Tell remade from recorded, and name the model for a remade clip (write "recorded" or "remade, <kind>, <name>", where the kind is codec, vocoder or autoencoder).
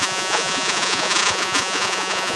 remade, vocoder, Vocos